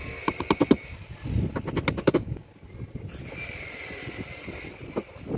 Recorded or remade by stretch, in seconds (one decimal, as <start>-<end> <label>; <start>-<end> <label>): 0.0-2.1 recorded; 2.1-2.5 remade; 2.5-5.4 recorded